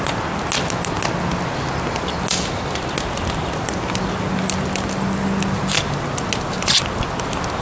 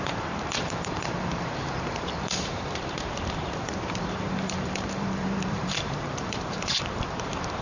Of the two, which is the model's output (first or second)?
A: second